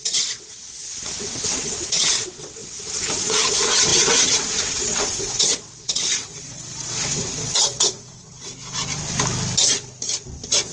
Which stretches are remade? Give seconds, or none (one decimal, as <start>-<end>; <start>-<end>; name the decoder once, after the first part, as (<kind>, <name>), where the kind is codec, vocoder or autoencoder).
0.0-8.5 (vocoder, WaveNeXt)